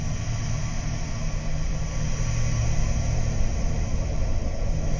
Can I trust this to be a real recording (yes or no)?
yes